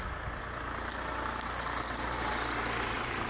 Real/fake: real